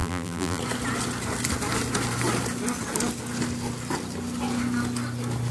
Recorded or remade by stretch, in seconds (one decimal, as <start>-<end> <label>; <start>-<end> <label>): 0.0-0.6 remade; 0.6-5.5 recorded